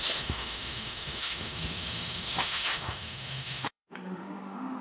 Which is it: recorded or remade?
remade